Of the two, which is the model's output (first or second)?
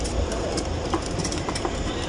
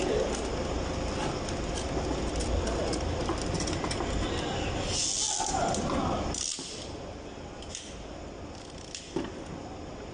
first